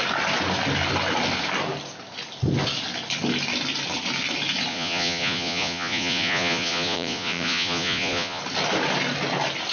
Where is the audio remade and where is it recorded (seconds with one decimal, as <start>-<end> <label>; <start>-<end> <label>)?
0.0-4.7 recorded; 4.7-8.4 remade; 8.4-9.7 recorded